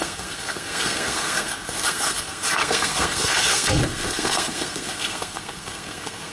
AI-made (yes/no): yes